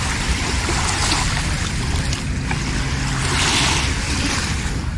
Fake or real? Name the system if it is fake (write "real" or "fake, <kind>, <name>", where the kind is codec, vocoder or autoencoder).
real